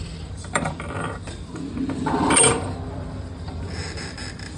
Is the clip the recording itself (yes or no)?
no